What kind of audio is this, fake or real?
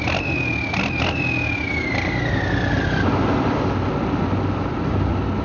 real